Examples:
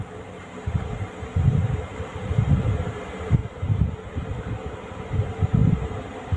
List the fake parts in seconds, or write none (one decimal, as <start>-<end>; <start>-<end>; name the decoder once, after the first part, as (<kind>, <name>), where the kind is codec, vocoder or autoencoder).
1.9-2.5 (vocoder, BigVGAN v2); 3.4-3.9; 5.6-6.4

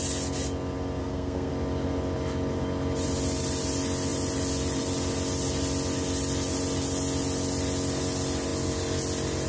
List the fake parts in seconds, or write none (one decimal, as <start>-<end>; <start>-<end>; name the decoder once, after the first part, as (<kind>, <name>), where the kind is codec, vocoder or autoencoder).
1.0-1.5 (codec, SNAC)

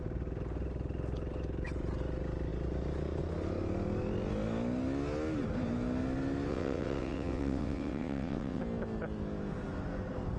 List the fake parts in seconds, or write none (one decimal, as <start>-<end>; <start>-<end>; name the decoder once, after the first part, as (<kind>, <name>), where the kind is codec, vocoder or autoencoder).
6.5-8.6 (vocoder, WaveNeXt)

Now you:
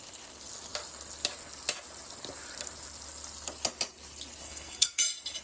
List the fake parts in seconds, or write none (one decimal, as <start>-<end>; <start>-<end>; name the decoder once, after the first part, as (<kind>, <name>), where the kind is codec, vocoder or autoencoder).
4.4-5.0 (codec, SNAC)

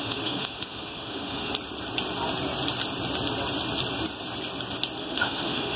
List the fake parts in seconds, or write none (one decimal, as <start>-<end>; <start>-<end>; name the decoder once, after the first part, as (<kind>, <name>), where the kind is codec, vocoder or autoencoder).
0.0-1.5 (autoencoder, DAC-VAE); 5.0-5.8